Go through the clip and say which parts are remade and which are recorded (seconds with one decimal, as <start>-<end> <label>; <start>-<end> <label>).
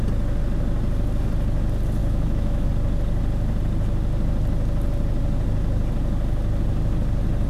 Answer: 0.0-2.0 recorded; 2.0-2.7 remade; 2.7-7.5 recorded